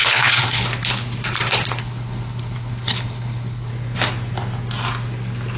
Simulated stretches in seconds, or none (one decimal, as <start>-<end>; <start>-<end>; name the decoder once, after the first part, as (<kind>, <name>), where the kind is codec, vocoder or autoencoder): 0.0-0.7 (codec, HILCodec); 1.8-3.7

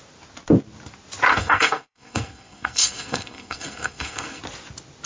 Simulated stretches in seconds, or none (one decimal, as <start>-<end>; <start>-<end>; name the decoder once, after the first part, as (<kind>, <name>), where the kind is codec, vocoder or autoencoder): 1.3-4.4 (codec, SNAC)

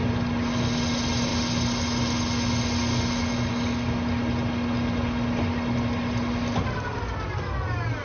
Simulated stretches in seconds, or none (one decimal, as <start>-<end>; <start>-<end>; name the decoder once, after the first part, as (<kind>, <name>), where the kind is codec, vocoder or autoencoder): none

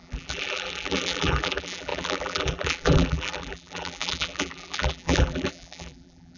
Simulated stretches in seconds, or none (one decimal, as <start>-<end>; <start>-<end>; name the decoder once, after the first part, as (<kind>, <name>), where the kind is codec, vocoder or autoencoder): 0.0-6.4 (vocoder, BigVGAN v2)

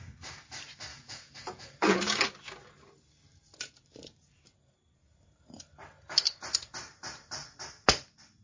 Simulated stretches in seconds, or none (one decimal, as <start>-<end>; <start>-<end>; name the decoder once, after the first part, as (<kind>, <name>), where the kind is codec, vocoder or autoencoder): 0.9-2.0 (vocoder, Vocos)